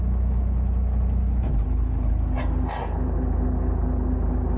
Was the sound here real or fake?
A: real